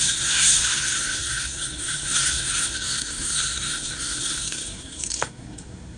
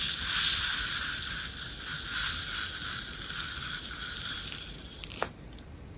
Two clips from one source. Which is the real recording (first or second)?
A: second